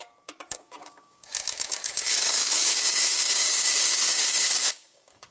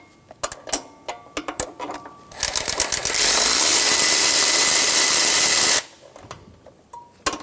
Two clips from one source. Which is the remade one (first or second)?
first